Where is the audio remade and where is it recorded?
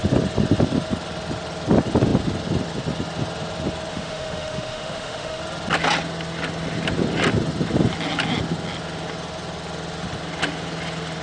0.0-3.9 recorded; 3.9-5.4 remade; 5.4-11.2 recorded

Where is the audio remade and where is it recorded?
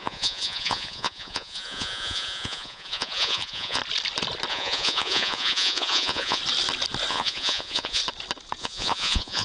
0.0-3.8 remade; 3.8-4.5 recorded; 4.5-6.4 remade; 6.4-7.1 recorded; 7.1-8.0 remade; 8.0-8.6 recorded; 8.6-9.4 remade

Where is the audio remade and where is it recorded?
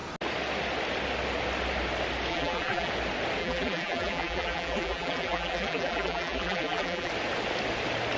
0.0-2.3 recorded; 2.3-2.9 remade; 2.9-3.4 recorded; 3.4-7.1 remade; 7.1-8.2 recorded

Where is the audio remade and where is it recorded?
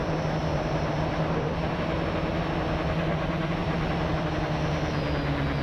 0.0-1.9 remade; 1.9-5.6 recorded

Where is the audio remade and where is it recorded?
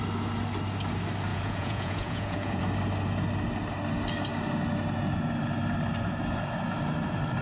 0.0-1.3 recorded; 1.3-2.6 remade; 2.6-7.4 recorded